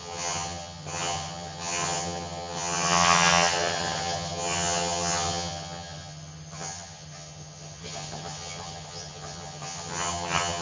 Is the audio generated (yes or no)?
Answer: yes